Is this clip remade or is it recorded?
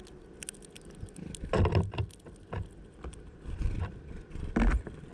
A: recorded